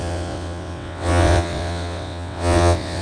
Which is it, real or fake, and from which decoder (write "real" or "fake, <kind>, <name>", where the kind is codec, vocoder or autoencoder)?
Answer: fake, vocoder, WaveNeXt